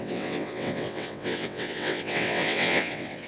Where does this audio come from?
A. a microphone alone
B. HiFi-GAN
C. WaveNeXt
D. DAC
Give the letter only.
C